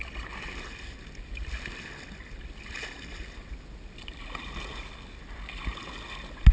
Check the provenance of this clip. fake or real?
real